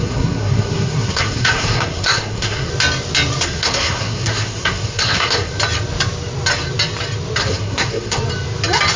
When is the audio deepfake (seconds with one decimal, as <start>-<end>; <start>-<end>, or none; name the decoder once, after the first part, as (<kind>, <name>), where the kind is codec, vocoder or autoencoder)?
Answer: 0.0-2.7 (codec, SNAC); 3.4-5.5; 7.4-8.2